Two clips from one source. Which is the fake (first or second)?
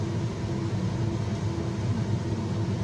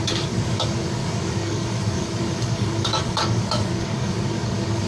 second